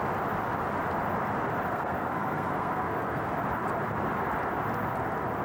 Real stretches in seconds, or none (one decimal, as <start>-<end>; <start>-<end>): 0.0-1.7; 3.3-5.4